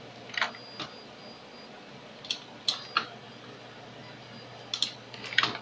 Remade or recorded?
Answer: recorded